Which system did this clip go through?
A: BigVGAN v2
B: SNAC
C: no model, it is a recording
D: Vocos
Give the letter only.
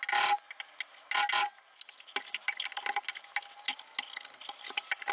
C